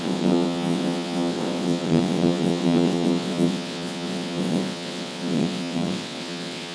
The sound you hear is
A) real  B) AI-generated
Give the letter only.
B